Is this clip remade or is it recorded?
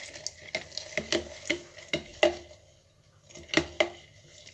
recorded